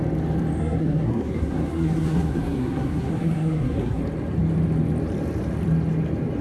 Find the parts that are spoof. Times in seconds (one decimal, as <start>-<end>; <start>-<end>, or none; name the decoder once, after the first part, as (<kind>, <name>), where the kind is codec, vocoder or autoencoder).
0.6-4.0 (codec, SNAC)